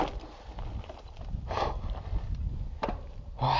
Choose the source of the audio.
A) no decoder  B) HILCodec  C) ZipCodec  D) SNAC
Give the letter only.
A